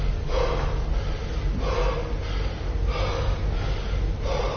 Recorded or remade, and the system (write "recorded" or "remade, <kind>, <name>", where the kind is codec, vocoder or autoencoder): recorded